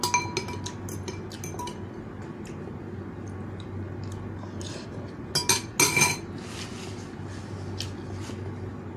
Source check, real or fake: real